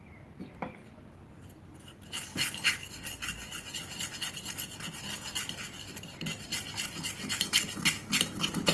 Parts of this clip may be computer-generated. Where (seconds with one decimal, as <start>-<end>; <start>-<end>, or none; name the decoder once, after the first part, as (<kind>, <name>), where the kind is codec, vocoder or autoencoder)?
none